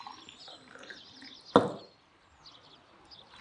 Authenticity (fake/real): real